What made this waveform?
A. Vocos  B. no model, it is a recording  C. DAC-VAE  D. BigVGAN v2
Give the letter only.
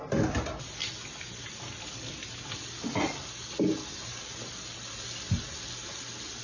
B